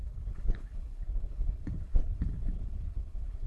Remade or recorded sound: remade